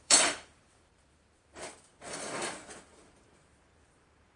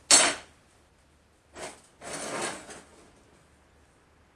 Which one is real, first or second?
second